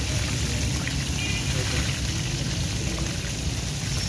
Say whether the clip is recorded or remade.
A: recorded